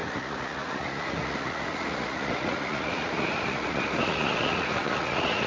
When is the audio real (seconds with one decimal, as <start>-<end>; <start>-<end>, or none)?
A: none